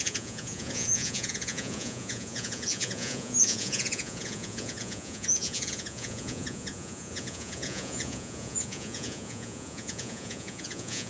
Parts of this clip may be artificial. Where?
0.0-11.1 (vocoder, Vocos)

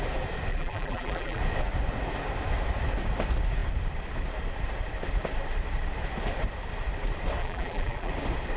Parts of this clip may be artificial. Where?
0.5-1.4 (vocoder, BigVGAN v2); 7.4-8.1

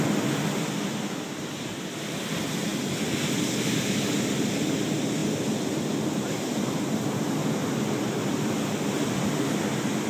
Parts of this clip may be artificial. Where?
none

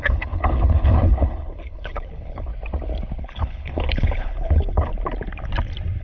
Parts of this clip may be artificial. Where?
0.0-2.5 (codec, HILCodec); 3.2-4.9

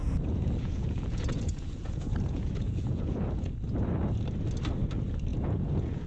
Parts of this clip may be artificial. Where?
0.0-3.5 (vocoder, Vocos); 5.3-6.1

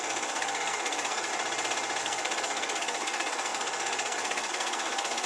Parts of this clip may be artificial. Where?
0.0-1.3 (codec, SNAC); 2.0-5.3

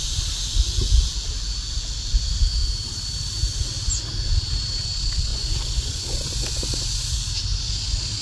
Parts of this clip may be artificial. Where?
5.3-6.8 (vocoder, Vocos)

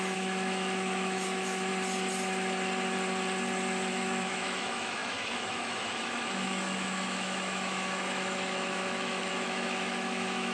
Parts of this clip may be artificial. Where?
0.0-1.7 (autoencoder, DAC-VAE); 3.9-10.5